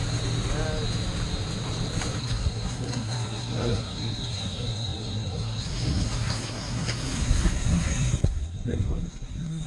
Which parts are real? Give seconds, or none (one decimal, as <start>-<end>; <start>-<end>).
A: 0.0-2.2